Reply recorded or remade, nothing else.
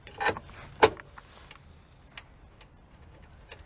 recorded